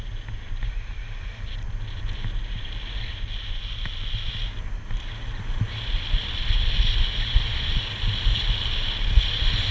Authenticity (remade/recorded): recorded